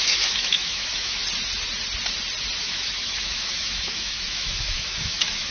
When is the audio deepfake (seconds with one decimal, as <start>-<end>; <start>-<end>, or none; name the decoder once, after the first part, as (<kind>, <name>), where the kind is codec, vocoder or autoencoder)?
0.0-1.2 (autoencoder, DAC-VAE); 2.6-5.5